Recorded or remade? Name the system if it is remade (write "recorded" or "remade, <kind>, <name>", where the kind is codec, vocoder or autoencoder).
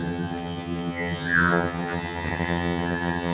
remade, vocoder, HiFi-GAN